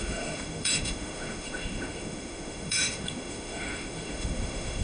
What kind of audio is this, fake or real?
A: fake